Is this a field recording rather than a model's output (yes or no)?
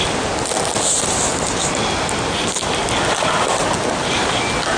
yes